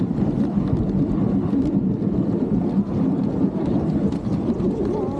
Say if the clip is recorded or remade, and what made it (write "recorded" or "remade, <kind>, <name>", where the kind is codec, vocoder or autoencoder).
recorded